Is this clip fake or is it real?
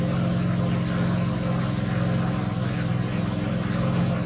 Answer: real